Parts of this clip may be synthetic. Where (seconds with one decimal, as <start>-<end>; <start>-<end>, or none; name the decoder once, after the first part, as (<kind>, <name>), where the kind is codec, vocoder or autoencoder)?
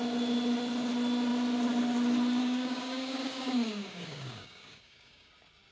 2.4-5.3 (codec, DAC)